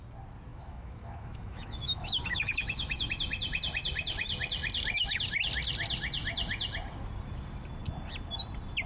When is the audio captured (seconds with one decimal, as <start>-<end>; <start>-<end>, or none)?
0.0-0.5; 3.1-8.9